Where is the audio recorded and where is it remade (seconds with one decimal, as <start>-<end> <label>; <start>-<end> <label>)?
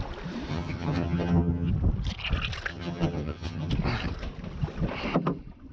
0.0-0.5 recorded; 0.5-1.7 remade; 1.7-2.7 recorded; 2.7-3.7 remade; 3.7-5.7 recorded